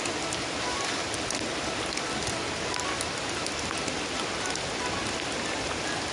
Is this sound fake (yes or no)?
no